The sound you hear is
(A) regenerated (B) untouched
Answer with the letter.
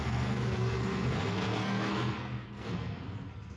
A